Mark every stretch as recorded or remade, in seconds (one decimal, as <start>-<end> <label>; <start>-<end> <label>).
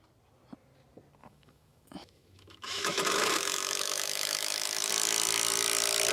0.0-1.2 recorded; 1.2-4.9 remade; 4.9-6.1 recorded